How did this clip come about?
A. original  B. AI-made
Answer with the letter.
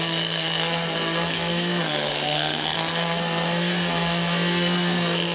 B